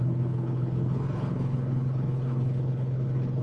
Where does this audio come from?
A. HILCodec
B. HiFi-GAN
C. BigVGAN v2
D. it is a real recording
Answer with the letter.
A